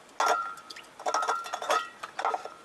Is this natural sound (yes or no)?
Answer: yes